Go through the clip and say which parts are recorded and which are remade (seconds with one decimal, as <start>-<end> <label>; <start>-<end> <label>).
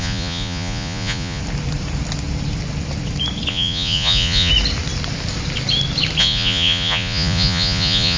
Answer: 0.0-1.4 remade; 1.4-3.5 recorded; 3.5-4.5 remade; 4.5-6.2 recorded; 6.2-8.2 remade